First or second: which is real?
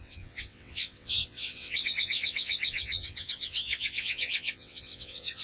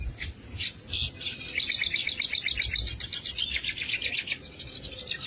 second